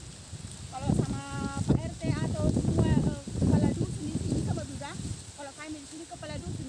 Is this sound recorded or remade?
recorded